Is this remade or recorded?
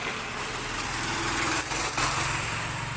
recorded